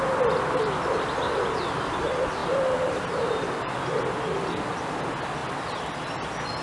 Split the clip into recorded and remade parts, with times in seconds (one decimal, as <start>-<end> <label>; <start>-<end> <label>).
0.0-5.4 recorded; 5.4-6.1 remade; 6.1-6.6 recorded